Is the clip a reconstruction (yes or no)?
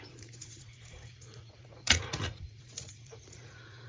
yes